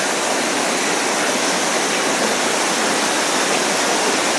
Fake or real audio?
real